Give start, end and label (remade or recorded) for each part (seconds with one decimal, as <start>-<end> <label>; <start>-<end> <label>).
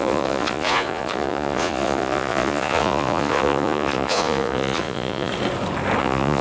0.0-5.3 remade; 5.3-6.0 recorded; 6.0-6.4 remade